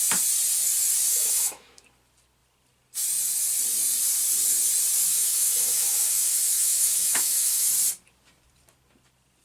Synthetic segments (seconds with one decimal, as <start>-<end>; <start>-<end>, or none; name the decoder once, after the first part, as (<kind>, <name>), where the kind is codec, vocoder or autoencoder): 1.1-1.8 (autoencoder, DAC-VAE); 5.1-7.7